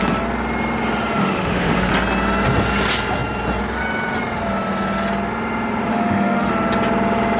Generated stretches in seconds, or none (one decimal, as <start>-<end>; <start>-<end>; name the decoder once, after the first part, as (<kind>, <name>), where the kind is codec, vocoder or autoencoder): 1.2-1.9 (autoencoder, DAC-VAE); 5.9-6.5